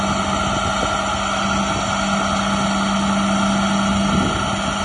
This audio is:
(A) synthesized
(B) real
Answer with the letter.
B